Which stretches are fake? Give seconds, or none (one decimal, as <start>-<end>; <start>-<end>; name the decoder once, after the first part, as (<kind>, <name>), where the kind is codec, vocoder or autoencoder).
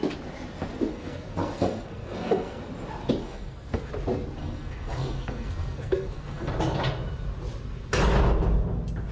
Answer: 0.9-2.6 (codec, SNAC); 3.2-3.9; 4.4-6.5